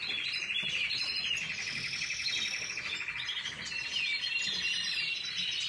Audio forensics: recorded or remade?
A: recorded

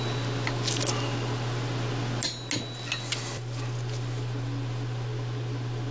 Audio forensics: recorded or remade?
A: recorded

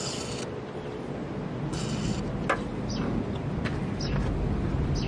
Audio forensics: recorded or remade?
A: recorded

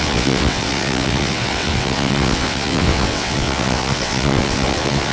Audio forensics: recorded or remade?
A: remade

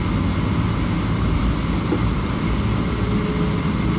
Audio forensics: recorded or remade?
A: recorded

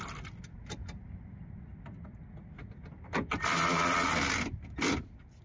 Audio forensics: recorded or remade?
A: recorded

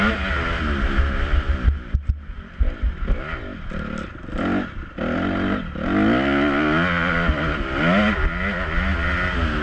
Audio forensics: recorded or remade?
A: recorded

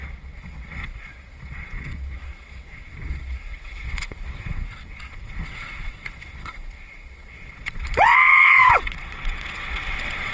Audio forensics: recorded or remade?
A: remade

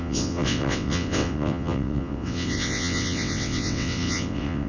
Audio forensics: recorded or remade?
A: remade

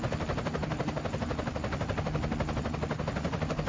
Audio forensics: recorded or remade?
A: recorded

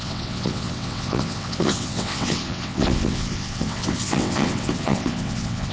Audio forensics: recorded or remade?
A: remade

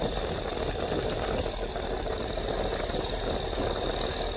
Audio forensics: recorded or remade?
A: recorded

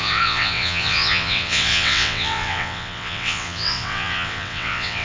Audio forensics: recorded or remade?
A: remade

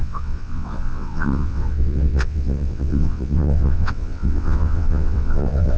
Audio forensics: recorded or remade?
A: remade